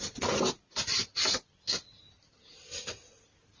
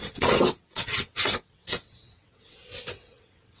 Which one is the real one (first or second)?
first